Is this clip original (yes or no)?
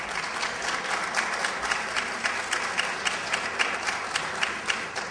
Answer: yes